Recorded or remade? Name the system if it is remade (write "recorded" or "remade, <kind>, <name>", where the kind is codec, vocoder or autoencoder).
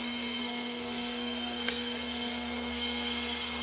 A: remade, codec, SNAC